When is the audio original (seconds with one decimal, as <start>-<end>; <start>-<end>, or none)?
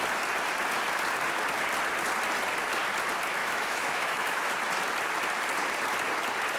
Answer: 0.0-3.4; 4.5-6.6